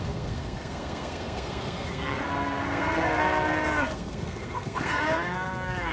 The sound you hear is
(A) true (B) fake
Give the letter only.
B